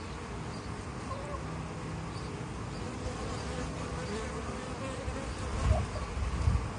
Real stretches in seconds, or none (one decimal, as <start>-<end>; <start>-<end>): 0.0-6.8